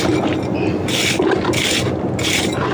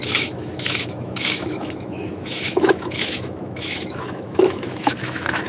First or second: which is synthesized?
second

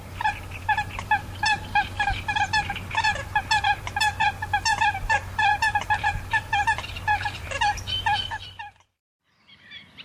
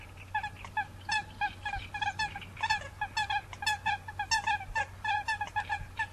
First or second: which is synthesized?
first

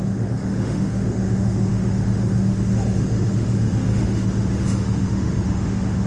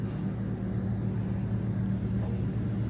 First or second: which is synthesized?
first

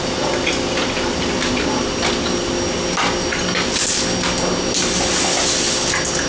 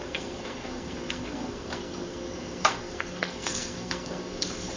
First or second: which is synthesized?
second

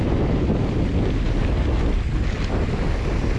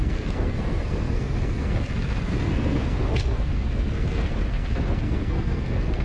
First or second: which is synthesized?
second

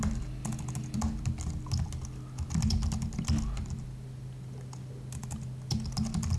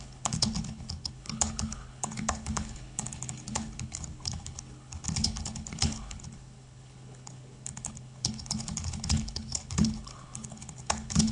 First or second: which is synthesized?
second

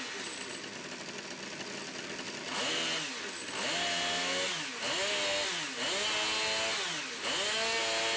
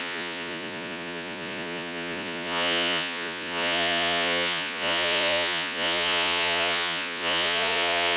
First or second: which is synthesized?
second